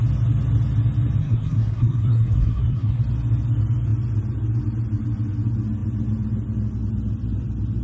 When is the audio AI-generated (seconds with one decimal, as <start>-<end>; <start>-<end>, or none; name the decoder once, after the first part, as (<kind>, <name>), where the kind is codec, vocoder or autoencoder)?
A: 1.2-3.0 (codec, SNAC)